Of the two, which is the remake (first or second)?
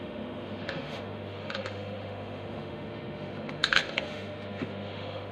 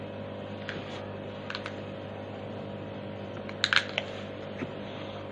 first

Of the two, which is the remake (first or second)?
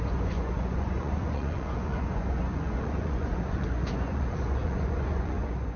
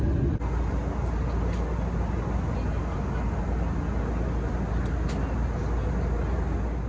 first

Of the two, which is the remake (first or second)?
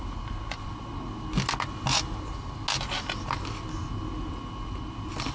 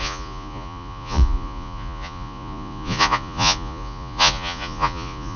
second